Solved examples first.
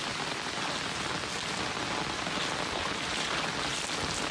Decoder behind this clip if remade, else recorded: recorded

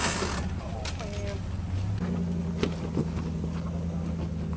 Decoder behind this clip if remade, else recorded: recorded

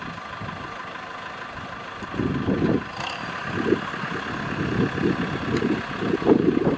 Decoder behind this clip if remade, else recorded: recorded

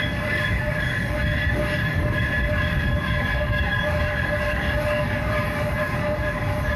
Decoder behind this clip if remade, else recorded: remade, codec, DAC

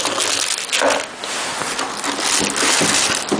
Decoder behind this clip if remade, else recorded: recorded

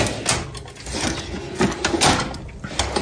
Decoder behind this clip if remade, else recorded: recorded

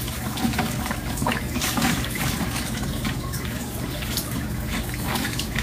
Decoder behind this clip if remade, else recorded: remade, codec, DAC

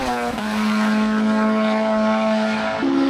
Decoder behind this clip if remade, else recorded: remade, codec, DAC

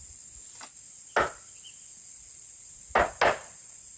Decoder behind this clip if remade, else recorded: recorded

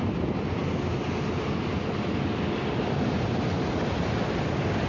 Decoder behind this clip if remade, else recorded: recorded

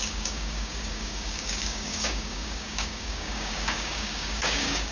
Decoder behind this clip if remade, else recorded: remade, codec, DAC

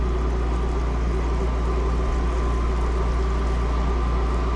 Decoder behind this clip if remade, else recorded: recorded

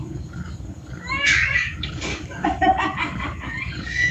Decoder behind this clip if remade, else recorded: remade, codec, DAC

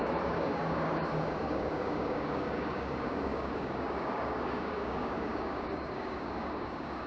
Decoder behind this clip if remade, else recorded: remade, codec, DAC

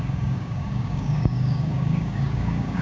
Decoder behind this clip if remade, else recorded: remade, codec, DAC